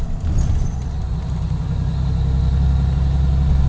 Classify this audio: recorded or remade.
recorded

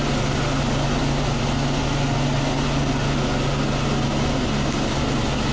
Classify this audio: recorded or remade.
recorded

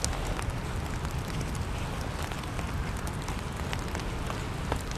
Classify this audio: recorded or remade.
recorded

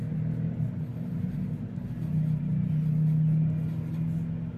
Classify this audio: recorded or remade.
recorded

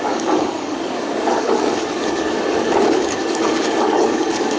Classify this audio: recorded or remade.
remade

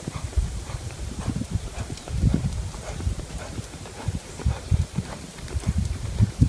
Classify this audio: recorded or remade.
remade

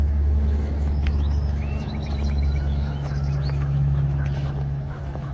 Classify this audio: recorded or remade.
remade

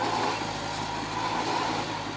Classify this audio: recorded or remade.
recorded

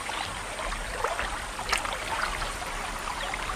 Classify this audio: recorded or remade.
recorded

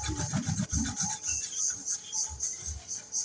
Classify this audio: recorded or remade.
recorded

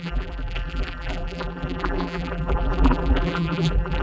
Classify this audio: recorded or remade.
remade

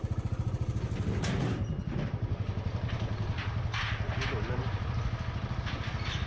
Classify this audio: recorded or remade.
recorded